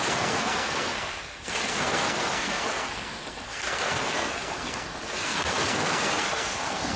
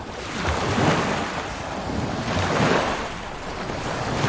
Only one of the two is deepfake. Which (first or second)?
first